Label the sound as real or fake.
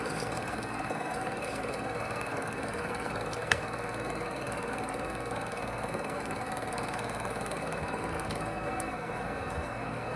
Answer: fake